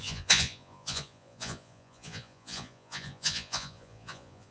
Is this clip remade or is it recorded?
remade